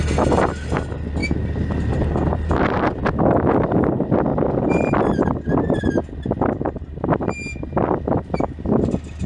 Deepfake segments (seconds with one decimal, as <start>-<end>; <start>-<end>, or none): 1.2-2.5